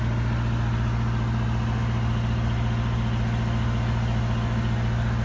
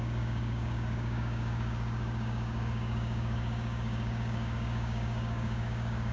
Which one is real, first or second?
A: first